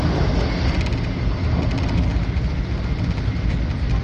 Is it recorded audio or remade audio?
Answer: recorded